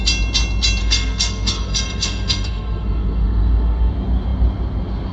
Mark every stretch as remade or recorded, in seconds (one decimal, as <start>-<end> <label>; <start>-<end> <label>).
0.0-0.8 recorded; 0.8-3.9 remade; 3.9-5.1 recorded